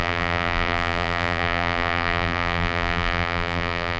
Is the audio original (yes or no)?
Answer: no